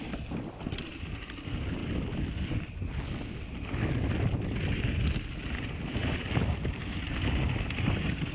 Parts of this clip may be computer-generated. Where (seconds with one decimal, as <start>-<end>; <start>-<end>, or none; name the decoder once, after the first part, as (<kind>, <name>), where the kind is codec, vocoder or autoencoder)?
6.0-6.9 (vocoder, BigVGAN v2)